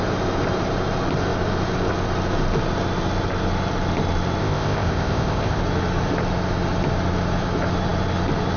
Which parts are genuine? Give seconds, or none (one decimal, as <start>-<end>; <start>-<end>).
0.0-4.4; 5.6-8.6